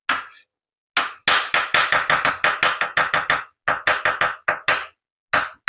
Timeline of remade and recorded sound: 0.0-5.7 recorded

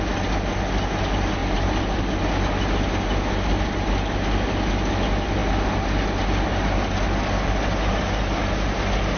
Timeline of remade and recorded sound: 0.0-1.4 recorded; 1.4-2.0 remade; 2.0-9.2 recorded

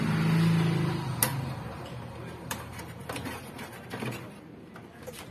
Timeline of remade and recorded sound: 0.0-1.3 recorded; 1.3-4.5 remade; 4.5-5.3 recorded

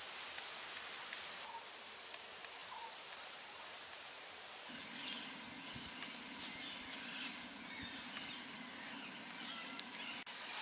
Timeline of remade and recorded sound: 0.0-2.6 recorded; 2.6-4.1 remade; 4.1-10.6 recorded

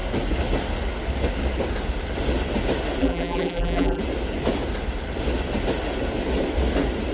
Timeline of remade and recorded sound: 0.0-3.0 recorded; 3.0-4.0 remade; 4.0-7.1 recorded

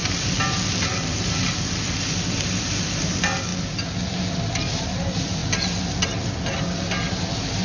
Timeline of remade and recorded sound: 0.0-2.2 recorded; 2.2-3.5 remade; 3.5-4.7 recorded; 4.7-5.4 remade; 5.4-7.6 recorded